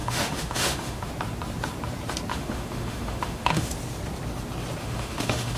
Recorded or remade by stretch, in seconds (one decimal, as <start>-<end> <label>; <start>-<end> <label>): 0.0-1.1 remade; 1.1-2.3 recorded; 2.3-3.7 remade; 3.7-4.8 recorded; 4.8-5.6 remade